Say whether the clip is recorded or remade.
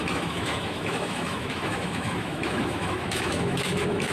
remade